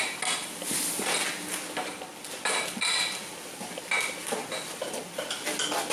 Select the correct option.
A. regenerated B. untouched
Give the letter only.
B